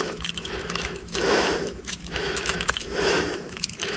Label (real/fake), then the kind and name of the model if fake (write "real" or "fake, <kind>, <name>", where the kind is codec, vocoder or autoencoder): fake, autoencoder, DAC-VAE